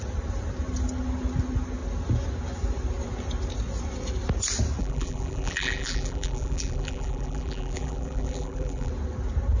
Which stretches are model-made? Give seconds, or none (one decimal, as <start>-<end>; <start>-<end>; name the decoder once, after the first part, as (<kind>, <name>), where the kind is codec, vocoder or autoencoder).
4.8-8.9 (vocoder, BigVGAN v2)